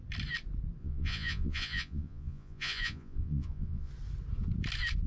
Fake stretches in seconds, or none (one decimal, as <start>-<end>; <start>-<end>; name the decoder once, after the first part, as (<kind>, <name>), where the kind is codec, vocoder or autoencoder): 0.8-3.9 (vocoder, Vocos)